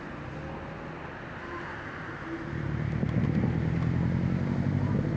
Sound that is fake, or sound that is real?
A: real